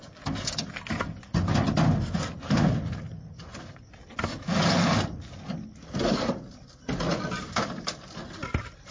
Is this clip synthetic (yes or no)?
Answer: no